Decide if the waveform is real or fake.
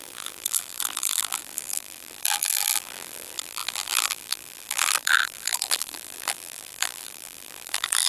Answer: fake